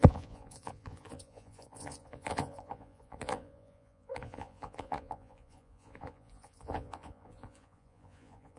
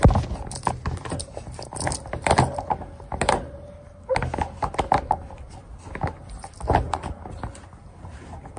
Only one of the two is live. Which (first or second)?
second